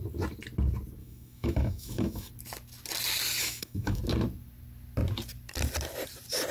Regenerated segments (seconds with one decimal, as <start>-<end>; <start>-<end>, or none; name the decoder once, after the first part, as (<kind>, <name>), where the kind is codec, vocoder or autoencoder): 1.0-2.3 (autoencoder, DAC-VAE); 3.4-4.0